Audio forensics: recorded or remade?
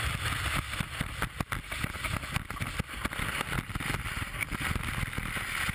recorded